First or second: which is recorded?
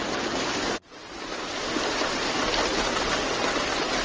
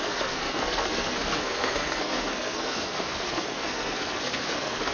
first